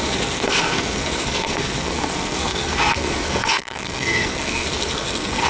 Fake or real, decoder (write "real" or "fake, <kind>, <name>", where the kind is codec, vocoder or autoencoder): fake, codec, SNAC